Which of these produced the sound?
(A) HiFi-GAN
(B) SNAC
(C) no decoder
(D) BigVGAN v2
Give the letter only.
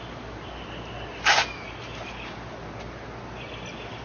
C